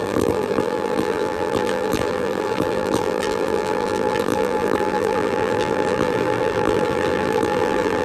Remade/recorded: remade